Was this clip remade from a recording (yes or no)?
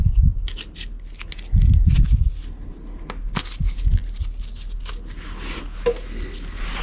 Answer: no